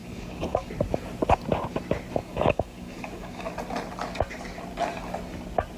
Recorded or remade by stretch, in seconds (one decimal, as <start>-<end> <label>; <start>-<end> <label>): 0.0-0.7 remade; 0.7-2.2 recorded; 2.2-3.5 remade; 3.5-5.8 recorded